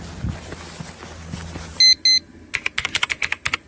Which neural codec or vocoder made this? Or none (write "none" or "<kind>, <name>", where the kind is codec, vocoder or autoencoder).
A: none